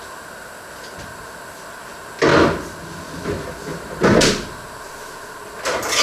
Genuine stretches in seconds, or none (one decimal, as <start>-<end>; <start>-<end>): 0.0-3.7; 4.9-6.0